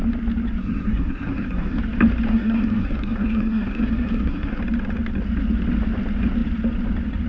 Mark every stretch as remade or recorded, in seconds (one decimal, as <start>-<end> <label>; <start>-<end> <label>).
0.0-0.6 recorded; 0.6-1.8 remade; 1.8-2.3 recorded; 2.3-4.6 remade; 4.6-7.3 recorded